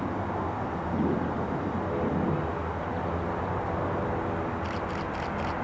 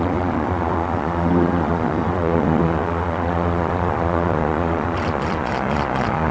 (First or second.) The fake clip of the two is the second